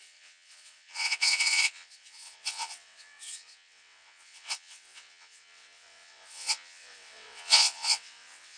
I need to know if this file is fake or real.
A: fake